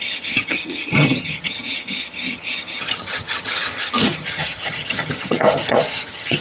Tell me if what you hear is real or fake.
fake